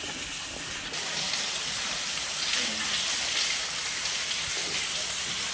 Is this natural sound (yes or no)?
yes